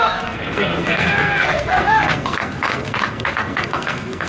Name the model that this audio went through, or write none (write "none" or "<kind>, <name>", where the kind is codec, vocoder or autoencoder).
codec, SNAC